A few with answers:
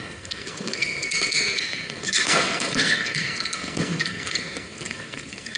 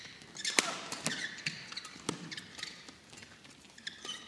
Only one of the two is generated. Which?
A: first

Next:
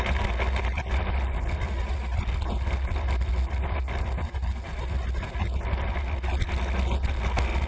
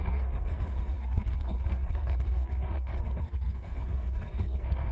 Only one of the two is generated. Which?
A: second